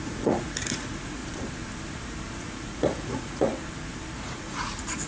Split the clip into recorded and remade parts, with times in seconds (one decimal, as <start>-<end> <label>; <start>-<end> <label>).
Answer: 0.0-1.2 remade; 1.2-2.4 recorded; 2.4-3.5 remade; 3.5-4.2 recorded; 4.2-5.1 remade